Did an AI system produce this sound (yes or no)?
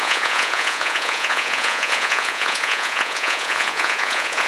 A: yes